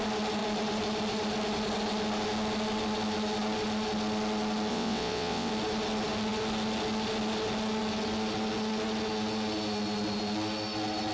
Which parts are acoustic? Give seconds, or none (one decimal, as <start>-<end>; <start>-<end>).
0.0-4.7; 5.5-11.1